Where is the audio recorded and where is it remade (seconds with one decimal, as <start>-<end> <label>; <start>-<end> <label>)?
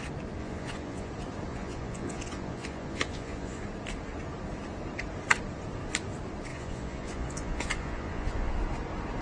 0.0-0.4 recorded; 0.4-1.1 remade; 1.1-1.5 recorded; 1.5-3.6 remade; 3.6-6.5 recorded; 6.5-8.5 remade; 8.5-9.2 recorded